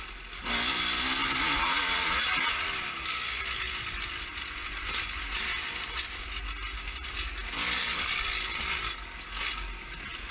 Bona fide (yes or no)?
yes